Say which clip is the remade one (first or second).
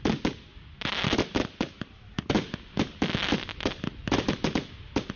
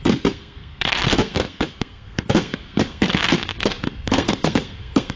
second